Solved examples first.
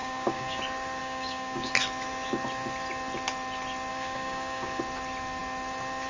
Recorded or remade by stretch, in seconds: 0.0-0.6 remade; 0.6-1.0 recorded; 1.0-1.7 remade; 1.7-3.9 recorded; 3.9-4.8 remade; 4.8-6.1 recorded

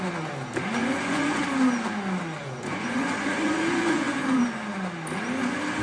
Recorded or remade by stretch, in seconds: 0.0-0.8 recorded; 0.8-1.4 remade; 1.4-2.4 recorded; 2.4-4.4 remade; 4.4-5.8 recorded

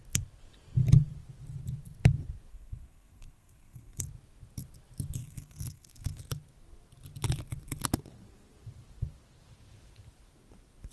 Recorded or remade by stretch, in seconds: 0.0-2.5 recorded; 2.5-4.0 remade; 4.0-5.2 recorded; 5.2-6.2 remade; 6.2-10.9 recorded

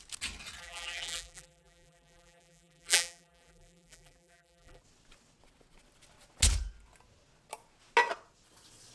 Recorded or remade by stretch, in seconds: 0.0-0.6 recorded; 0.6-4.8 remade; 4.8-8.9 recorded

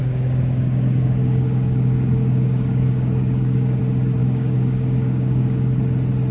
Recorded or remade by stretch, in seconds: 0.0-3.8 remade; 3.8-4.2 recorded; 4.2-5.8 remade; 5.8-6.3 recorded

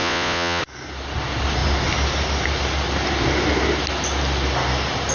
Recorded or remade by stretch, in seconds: 0.0-0.6 remade; 0.6-5.1 recorded